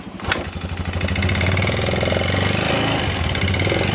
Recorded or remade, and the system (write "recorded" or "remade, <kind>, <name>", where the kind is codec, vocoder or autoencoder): recorded